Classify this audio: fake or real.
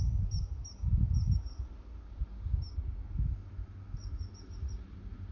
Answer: real